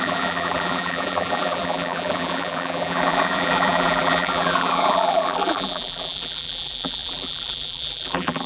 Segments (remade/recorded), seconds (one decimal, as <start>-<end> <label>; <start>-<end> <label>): 0.0-8.5 remade

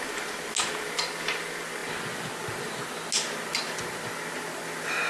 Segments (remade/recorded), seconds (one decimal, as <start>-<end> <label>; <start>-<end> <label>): 0.0-5.1 recorded

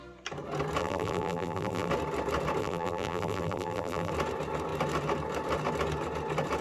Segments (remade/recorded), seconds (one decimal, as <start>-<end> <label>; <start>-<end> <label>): 0.0-0.8 recorded; 0.8-1.9 remade; 1.9-2.6 recorded; 2.6-4.1 remade; 4.1-6.6 recorded